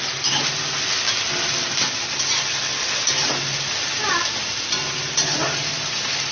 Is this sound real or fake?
real